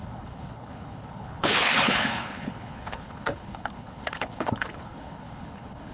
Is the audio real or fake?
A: fake